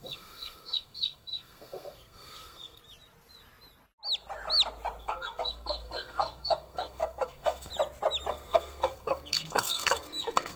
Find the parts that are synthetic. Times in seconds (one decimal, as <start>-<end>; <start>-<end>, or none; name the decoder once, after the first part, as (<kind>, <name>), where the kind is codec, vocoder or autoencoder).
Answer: 0.0-2.8 (codec, SNAC); 5.0-7.7; 8.3-10.6